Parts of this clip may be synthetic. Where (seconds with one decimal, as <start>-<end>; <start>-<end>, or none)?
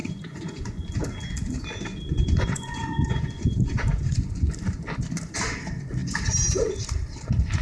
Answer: 0.0-1.0; 1.9-4.5